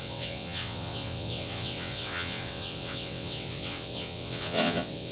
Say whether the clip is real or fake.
fake